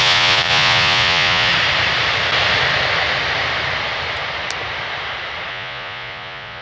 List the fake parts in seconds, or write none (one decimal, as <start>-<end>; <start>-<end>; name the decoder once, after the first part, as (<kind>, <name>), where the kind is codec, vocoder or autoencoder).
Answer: 0.0-1.5 (vocoder, Vocos); 5.5-6.6